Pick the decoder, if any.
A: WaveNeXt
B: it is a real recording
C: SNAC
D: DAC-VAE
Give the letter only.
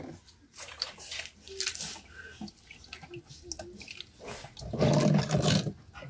B